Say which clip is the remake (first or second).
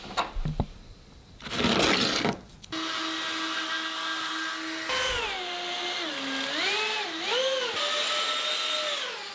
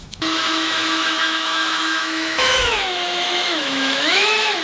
second